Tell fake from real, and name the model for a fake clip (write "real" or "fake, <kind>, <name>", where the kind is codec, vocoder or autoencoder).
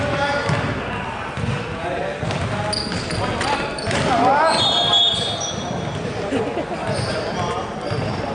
real